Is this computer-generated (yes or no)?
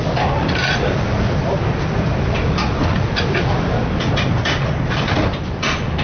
no